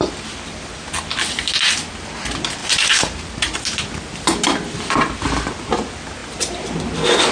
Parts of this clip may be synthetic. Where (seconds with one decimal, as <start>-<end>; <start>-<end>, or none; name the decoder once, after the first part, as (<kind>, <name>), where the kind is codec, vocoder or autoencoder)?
2.6-3.3 (vocoder, BigVGAN v2)